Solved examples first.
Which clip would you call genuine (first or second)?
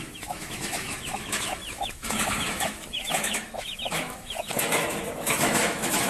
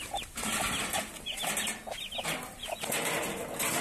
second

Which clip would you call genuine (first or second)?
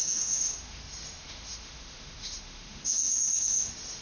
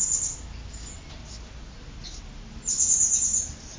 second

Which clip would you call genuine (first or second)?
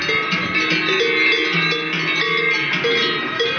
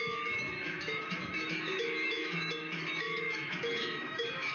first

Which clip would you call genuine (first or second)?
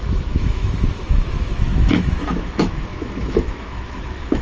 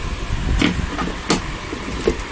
second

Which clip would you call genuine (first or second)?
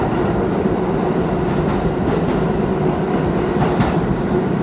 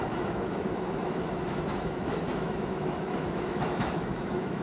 first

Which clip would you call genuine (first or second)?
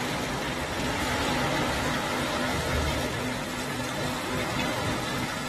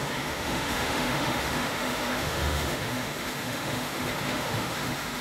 first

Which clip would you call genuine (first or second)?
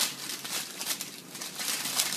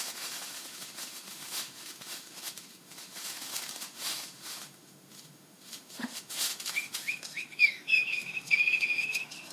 first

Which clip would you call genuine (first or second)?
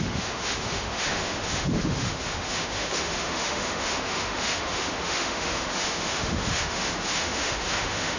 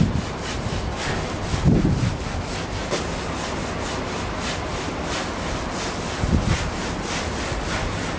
second